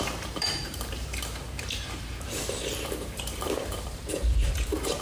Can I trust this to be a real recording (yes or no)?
no